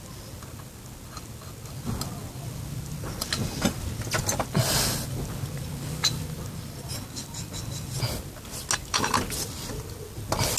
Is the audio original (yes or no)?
yes